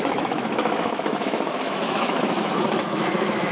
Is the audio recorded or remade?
remade